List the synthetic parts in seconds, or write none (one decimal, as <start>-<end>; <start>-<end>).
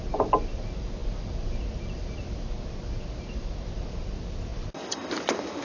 none